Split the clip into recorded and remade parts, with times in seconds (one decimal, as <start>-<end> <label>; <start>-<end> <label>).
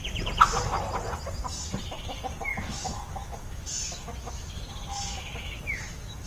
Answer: 0.0-2.5 recorded; 2.5-6.3 remade